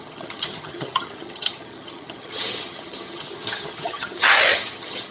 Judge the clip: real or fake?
fake